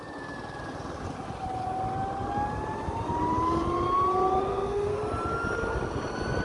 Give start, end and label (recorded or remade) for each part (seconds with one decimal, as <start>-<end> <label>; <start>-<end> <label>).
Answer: 0.0-4.5 recorded; 4.5-5.0 remade; 5.0-6.4 recorded